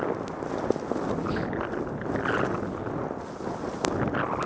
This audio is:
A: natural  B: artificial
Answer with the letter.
A